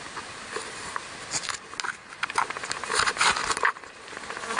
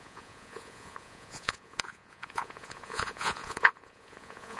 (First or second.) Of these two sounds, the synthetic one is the second